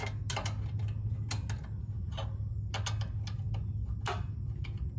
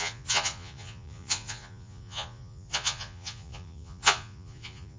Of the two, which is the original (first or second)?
first